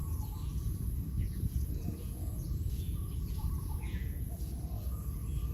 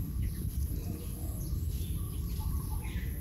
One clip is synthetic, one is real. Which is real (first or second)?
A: second